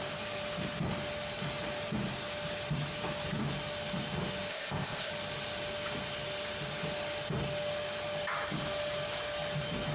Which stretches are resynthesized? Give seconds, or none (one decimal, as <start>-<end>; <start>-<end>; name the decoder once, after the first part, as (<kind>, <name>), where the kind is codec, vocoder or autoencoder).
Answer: 4.5-5.1 (codec, ZipCodec)